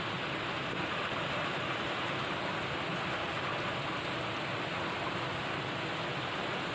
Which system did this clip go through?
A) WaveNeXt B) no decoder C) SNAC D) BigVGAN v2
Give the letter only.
B